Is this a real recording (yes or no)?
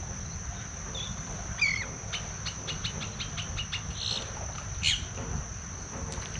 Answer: yes